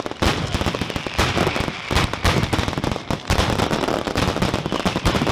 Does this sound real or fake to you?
fake